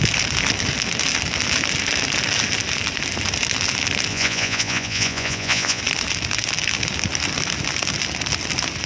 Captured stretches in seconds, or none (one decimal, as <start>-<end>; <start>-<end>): 0.0-4.1; 5.8-8.9